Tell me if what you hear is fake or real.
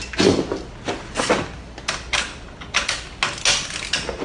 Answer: real